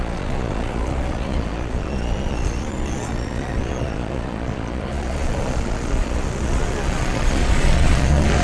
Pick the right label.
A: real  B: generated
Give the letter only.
B